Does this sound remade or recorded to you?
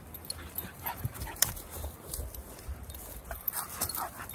remade